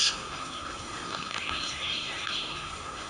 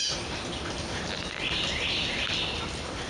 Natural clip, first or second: second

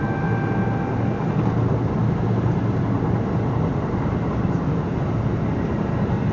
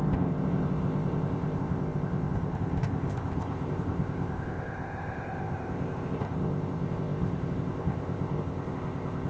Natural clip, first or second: first